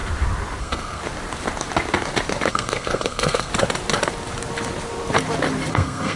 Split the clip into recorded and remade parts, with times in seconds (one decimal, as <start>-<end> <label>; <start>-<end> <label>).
0.0-0.6 recorded; 0.6-1.0 remade; 1.0-2.5 recorded; 2.5-3.5 remade; 3.5-5.7 recorded; 5.7-6.2 remade